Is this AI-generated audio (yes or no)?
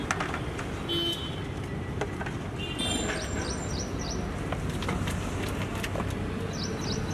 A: no